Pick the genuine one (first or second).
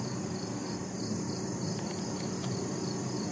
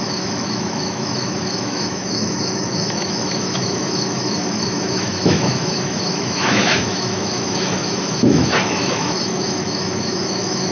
first